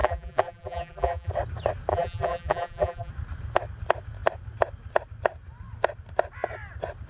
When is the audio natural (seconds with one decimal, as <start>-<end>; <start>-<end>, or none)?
1.3-1.9; 3.1-7.1